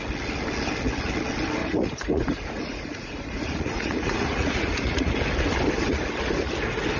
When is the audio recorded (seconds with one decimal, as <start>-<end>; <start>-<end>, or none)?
0.0-1.6; 5.1-7.0